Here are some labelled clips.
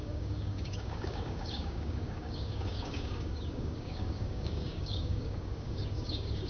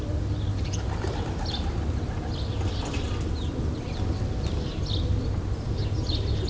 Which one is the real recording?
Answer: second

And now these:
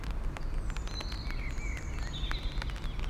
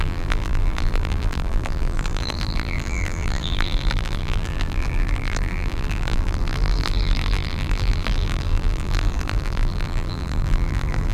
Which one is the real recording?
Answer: first